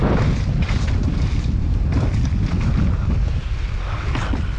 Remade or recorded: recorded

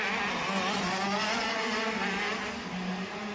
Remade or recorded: recorded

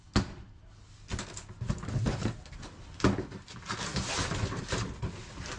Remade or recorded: recorded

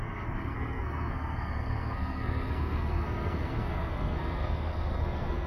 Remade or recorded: remade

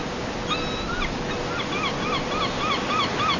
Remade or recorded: recorded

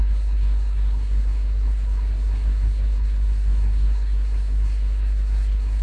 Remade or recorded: remade